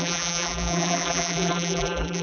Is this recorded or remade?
remade